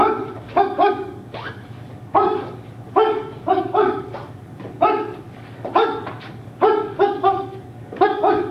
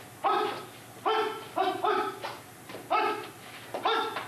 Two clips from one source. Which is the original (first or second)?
second